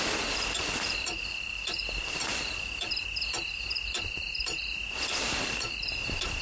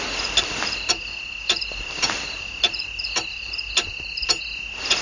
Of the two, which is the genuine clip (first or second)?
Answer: second